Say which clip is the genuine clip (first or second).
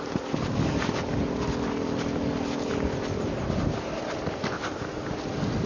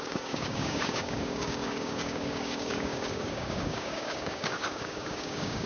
first